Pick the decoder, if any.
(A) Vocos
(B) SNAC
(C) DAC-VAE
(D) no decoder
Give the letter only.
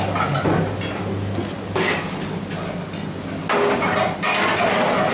D